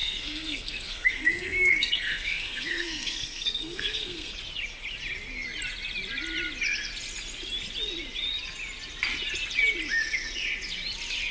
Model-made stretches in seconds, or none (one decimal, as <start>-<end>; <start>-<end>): 0.0-4.3